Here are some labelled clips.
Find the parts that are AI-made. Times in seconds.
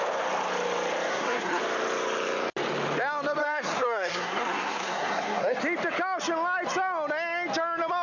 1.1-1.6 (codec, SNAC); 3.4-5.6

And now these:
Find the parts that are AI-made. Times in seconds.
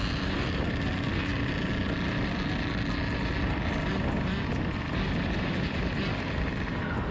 none